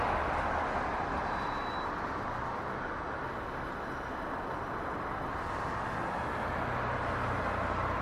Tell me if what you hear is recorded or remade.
recorded